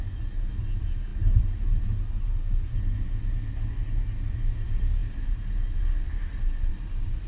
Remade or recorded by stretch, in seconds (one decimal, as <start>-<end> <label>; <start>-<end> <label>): 0.0-5.0 recorded; 5.0-5.8 remade; 5.8-6.7 recorded; 6.7-7.3 remade